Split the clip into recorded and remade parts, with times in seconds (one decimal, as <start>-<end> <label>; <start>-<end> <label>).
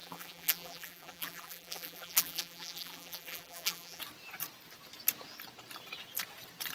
0.0-4.0 remade; 4.0-6.7 recorded